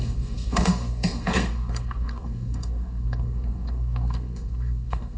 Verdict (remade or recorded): remade